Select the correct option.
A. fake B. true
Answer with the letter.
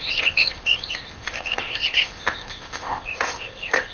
A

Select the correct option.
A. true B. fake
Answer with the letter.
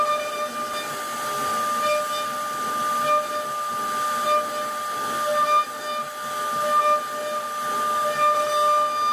A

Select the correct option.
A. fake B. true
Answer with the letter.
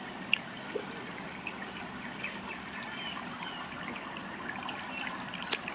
B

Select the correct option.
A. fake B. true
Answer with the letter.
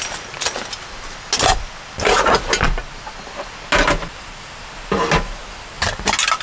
B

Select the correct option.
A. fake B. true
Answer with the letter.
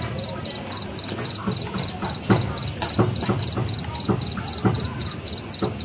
B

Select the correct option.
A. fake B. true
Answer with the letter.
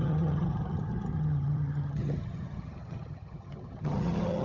A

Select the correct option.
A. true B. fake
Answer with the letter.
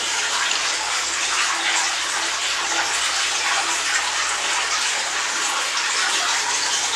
A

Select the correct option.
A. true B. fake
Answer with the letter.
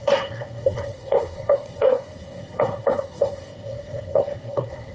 B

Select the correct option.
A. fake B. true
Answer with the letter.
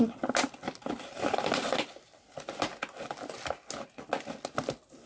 B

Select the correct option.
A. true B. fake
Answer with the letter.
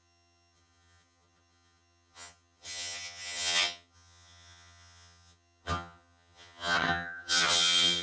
B